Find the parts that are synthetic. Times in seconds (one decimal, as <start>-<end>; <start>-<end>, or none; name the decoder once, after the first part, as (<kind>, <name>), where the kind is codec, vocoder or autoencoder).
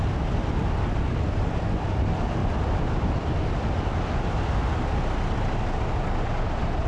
2.4-4.6 (vocoder, BigVGAN v2)